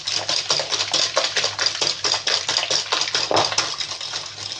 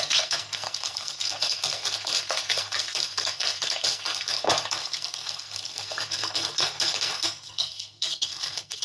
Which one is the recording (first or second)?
first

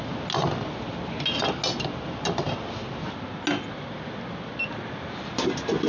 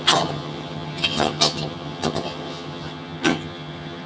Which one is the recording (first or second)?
first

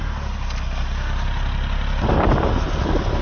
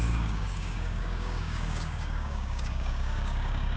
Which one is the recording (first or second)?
first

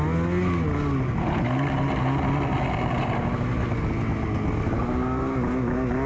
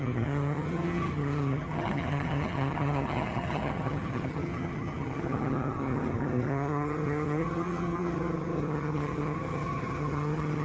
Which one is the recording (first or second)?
first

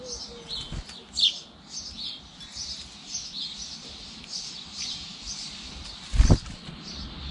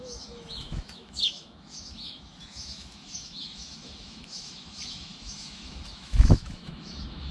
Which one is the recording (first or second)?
first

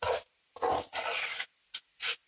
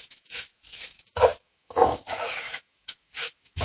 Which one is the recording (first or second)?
first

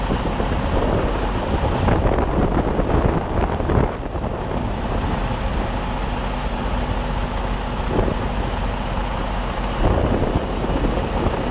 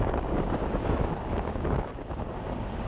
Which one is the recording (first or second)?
first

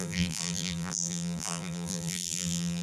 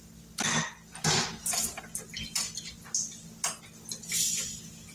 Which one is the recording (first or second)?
second